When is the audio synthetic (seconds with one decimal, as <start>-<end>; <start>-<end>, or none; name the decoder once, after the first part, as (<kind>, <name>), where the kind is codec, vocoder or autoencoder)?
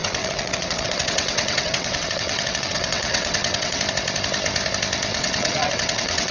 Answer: 0.0-3.8 (vocoder, WaveNeXt); 5.1-6.3